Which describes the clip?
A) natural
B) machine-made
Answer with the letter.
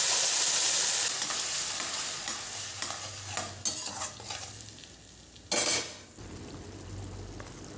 A